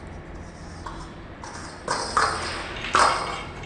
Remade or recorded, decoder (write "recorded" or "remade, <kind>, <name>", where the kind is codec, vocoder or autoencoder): recorded